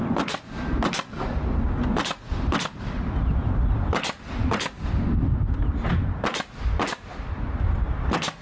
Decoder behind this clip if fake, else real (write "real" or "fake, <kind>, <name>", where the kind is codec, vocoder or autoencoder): real